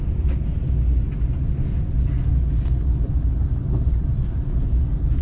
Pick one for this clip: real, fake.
real